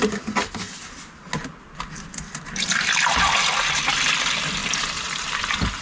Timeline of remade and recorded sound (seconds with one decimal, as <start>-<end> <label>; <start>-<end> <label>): 0.0-5.8 recorded